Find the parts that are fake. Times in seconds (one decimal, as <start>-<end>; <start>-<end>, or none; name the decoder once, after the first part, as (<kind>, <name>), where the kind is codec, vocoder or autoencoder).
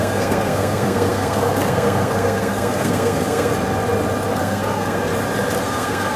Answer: 0.0-3.5 (codec, SNAC); 4.4-5.1; 5.6-6.2